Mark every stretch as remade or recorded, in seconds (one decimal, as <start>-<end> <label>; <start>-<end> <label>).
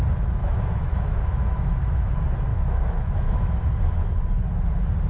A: 0.0-0.4 recorded; 0.4-2.1 remade; 2.1-2.5 recorded; 2.5-3.7 remade; 3.7-5.1 recorded